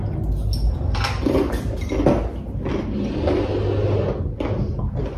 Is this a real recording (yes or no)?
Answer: yes